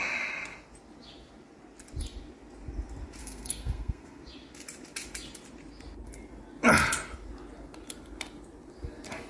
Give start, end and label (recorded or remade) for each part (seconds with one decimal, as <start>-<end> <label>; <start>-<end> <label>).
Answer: 0.0-3.2 recorded; 3.2-4.2 remade; 4.2-9.3 recorded